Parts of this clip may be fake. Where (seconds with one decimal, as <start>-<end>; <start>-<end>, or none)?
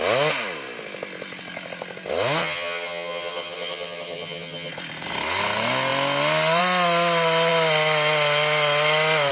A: 2.4-4.7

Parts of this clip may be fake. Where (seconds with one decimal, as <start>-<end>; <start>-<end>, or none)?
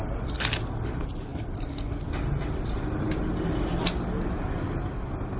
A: none